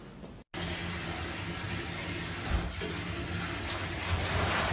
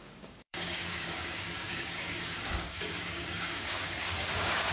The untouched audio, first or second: first